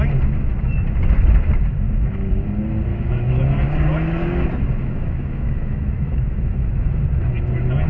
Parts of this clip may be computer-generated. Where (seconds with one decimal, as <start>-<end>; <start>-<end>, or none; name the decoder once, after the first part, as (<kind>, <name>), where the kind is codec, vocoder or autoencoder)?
2.9-3.4 (autoencoder, DAC-VAE); 4.8-7.0